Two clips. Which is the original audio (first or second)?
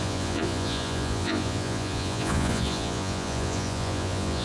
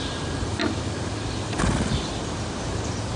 second